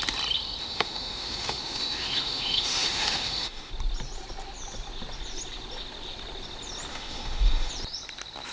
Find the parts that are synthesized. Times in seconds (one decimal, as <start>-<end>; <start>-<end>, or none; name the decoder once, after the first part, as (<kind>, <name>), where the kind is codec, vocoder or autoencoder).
0.6-3.7 (autoencoder, DAC-VAE); 6.9-7.7